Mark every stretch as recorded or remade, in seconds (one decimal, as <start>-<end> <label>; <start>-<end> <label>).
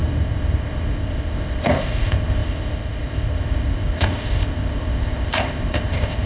0.0-6.3 remade